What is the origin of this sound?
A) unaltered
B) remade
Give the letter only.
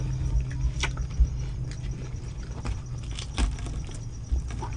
A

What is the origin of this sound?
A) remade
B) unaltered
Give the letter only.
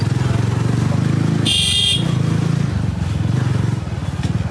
B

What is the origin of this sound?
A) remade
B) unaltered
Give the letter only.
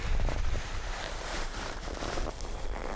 A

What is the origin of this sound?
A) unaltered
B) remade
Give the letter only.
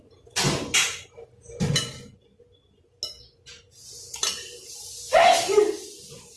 A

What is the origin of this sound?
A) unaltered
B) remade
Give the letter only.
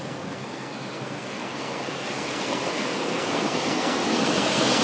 B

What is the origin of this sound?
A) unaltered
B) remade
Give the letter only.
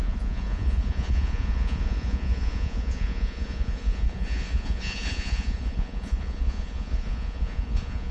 B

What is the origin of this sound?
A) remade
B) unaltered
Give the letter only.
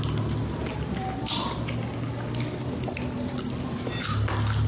B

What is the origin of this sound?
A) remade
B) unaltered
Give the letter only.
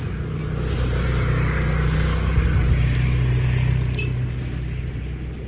B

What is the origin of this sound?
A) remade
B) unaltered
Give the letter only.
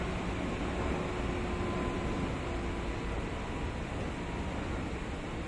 B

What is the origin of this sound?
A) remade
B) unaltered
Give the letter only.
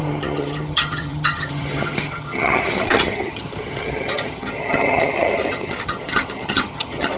A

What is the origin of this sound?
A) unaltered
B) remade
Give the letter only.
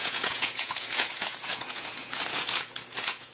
B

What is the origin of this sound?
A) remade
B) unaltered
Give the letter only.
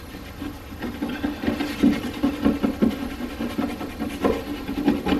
B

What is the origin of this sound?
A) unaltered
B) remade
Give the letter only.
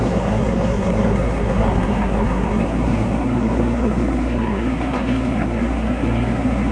B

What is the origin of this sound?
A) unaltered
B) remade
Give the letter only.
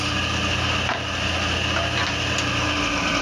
A